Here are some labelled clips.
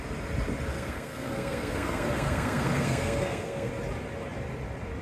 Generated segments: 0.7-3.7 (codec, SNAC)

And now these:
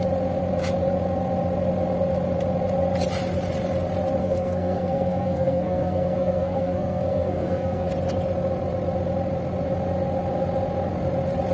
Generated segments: 4.2-7.9 (codec, SNAC)

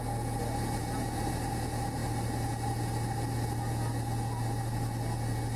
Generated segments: none

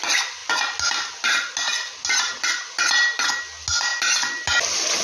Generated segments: none

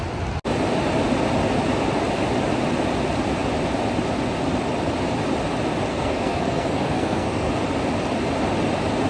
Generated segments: 5.9-7.5 (codec, SNAC)